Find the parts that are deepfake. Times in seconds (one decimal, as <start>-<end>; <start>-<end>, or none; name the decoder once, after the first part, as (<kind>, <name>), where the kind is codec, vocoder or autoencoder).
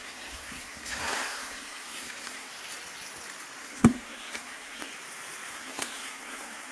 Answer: 0.0-2.5 (codec, SNAC); 3.6-4.9; 5.5-6.7